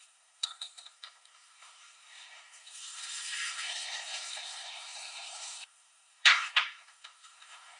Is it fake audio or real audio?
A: fake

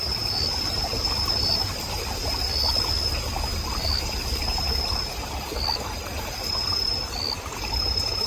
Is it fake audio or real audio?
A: real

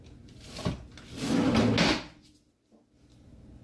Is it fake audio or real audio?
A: real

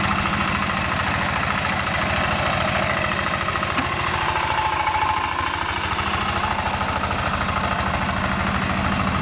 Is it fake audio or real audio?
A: real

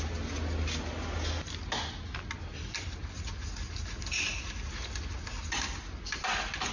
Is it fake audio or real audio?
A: real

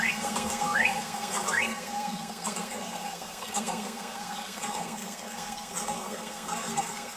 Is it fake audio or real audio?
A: fake